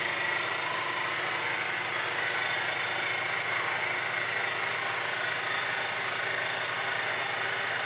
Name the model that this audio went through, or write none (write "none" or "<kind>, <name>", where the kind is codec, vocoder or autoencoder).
none